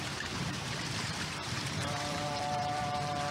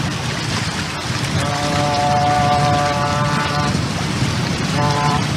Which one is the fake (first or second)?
first